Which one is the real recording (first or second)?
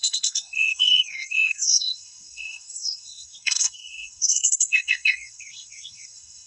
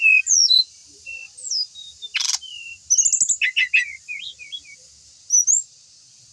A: second